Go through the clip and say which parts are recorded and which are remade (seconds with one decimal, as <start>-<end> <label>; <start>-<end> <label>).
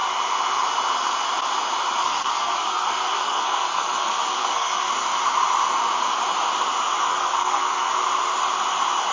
0.0-2.0 recorded; 2.0-4.9 remade; 4.9-7.1 recorded; 7.1-7.9 remade; 7.9-9.1 recorded